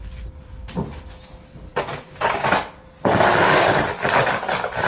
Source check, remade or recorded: recorded